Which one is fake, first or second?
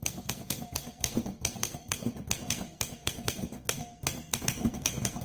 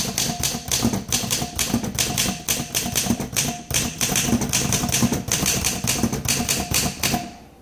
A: first